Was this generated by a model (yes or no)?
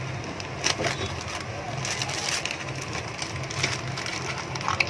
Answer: no